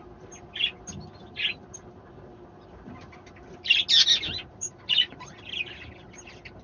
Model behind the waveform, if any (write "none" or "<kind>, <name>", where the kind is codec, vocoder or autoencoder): none